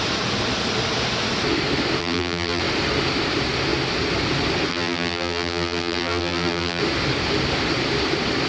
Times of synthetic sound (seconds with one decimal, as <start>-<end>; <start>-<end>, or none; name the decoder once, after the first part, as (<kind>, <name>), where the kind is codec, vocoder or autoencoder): 2.0-2.6 (vocoder, BigVGAN v2); 4.7-6.8